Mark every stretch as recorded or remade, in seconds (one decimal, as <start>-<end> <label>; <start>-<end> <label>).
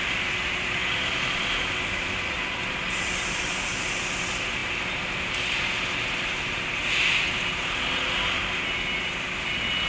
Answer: 0.0-9.9 recorded